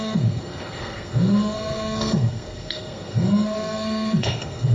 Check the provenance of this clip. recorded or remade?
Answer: remade